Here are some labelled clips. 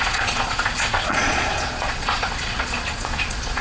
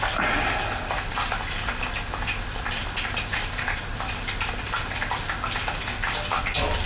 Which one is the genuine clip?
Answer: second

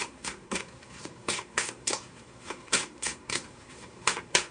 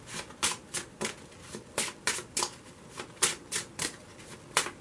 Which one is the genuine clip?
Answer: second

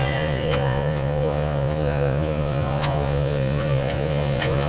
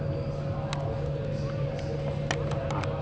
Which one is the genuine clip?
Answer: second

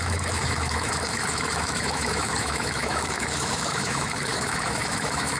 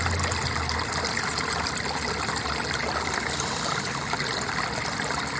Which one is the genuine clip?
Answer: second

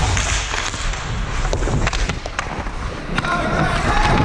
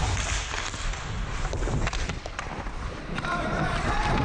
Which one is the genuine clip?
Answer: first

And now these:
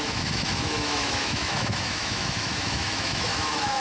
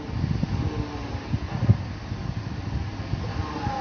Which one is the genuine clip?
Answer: second